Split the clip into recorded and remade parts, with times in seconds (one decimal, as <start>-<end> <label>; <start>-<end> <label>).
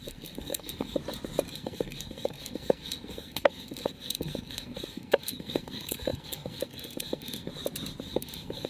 0.0-1.0 remade; 1.0-1.5 recorded; 1.5-7.5 remade; 7.5-8.0 recorded; 8.0-8.7 remade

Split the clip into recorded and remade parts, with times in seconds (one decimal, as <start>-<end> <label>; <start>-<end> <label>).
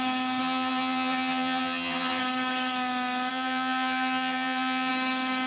0.0-0.4 recorded; 0.4-2.2 remade; 2.2-3.3 recorded; 3.3-4.9 remade; 4.9-5.5 recorded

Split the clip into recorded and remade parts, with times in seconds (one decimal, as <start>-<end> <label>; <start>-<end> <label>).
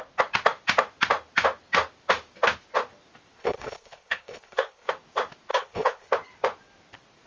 0.0-3.4 recorded; 3.4-4.9 remade; 4.9-5.5 recorded; 5.5-6.1 remade; 6.1-7.3 recorded